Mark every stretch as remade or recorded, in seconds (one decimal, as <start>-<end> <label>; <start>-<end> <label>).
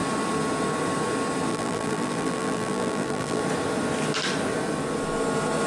0.0-1.5 recorded; 1.5-3.4 remade; 3.4-5.7 recorded